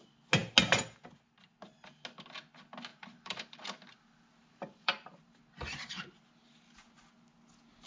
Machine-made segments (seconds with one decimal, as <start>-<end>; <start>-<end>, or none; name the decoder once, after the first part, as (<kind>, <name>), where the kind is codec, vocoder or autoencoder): 2.9-3.8 (vocoder, BigVGAN v2); 4.4-5.4

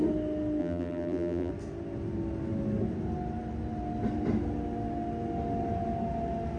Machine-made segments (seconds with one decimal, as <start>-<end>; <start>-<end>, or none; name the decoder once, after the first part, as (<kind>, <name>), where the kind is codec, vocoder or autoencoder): 0.6-1.5 (vocoder, BigVGAN v2)

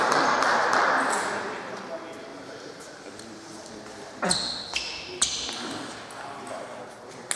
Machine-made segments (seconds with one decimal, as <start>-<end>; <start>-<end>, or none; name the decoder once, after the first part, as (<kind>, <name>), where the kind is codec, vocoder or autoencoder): 2.3-3.3 (vocoder, BigVGAN v2)